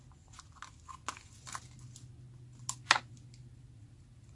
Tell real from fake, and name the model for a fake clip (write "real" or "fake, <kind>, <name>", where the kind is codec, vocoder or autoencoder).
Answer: real